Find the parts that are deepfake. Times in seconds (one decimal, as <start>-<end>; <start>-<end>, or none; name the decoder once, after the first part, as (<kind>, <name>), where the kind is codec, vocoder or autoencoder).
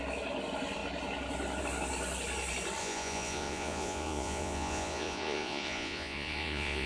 2.8-6.9 (vocoder, Vocos)